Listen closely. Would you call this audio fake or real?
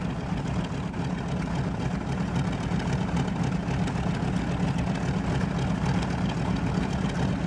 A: real